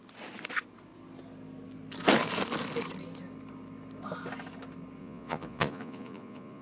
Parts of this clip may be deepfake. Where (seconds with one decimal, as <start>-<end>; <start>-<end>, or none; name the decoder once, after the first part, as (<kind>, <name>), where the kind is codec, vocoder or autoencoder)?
5.0-6.6 (vocoder, Vocos)